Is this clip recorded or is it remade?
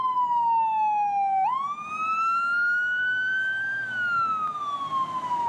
recorded